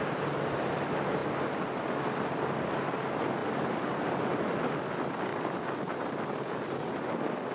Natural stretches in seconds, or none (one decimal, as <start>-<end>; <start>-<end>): 0.0-7.5